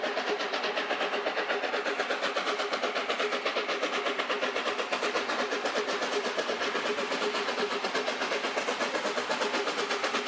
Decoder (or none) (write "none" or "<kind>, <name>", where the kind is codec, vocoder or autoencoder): none